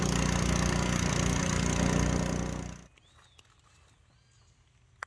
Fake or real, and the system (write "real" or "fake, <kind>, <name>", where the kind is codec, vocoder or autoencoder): real